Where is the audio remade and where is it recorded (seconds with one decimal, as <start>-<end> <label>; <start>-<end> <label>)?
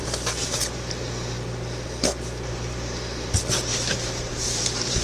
0.0-3.7 recorded; 3.7-5.0 remade